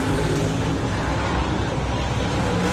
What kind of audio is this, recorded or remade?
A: remade